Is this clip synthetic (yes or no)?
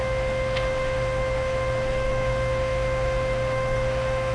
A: yes